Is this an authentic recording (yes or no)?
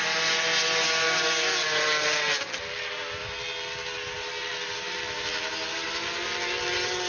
yes